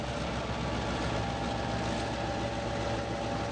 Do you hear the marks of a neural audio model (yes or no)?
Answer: no